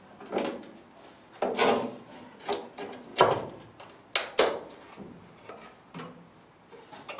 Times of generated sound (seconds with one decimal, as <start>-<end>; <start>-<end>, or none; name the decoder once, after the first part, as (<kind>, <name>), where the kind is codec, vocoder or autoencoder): 3.1-3.7 (vocoder, BigVGAN v2); 4.2-5.5